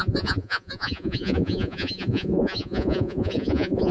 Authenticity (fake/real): fake